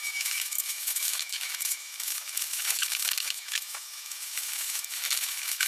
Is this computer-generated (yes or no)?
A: yes